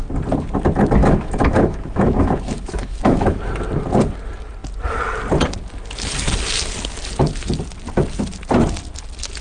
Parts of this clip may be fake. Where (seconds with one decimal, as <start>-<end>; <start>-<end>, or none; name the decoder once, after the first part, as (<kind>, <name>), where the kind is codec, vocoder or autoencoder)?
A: 1.0-3.4 (autoencoder, DAC-VAE)